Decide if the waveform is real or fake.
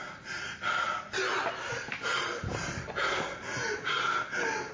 real